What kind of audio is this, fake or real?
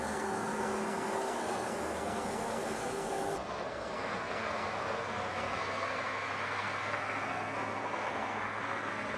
fake